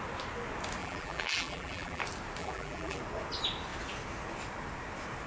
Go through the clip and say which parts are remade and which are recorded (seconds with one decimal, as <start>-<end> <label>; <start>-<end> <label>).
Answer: 0.0-0.8 recorded; 0.8-2.0 remade; 2.0-2.4 recorded; 2.4-3.0 remade; 3.0-5.3 recorded